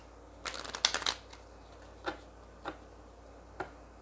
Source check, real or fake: real